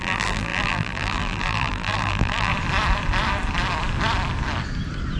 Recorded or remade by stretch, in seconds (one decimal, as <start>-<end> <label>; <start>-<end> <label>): 0.0-2.5 remade; 2.5-5.2 recorded